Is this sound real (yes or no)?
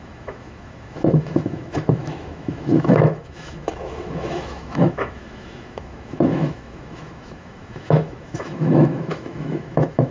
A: no